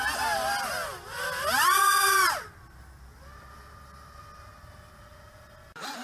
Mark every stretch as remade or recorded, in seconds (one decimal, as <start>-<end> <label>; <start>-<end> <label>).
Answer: 0.0-6.0 recorded